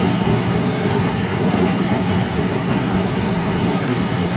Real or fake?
fake